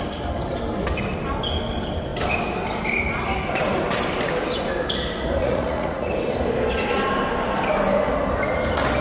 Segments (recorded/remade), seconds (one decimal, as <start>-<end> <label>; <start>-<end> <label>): 0.0-5.4 recorded; 5.4-6.1 remade; 6.1-9.0 recorded